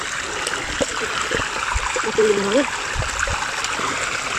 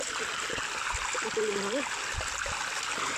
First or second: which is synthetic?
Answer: first